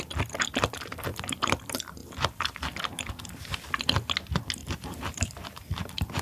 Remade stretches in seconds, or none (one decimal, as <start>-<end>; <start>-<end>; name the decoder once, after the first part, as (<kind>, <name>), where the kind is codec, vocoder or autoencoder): 1.1-1.6 (vocoder, BigVGAN v2); 4.6-6.2